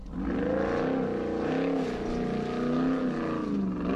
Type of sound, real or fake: real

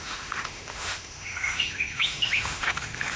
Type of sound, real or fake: fake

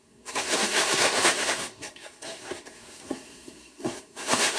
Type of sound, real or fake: fake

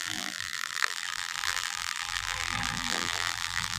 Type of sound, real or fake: fake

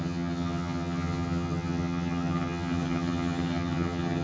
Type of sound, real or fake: fake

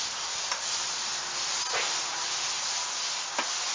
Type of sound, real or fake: real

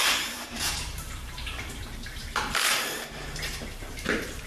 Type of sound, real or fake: fake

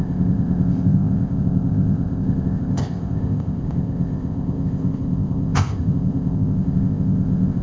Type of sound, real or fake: fake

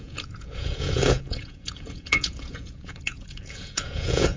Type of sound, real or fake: fake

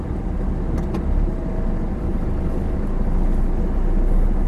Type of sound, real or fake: real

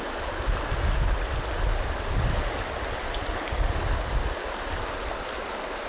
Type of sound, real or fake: real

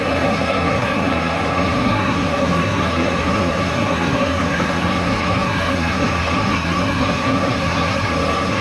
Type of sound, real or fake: fake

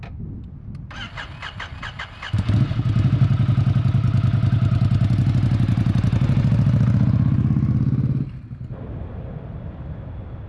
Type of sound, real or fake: real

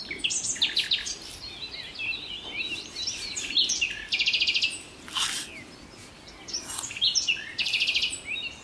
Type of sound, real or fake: real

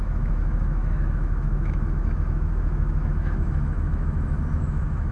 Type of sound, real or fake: fake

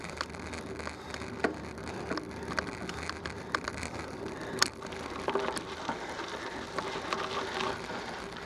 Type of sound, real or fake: real